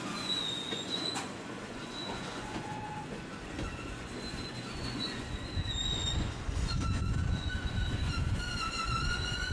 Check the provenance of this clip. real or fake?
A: fake